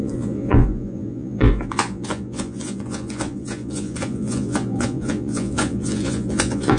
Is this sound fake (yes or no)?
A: yes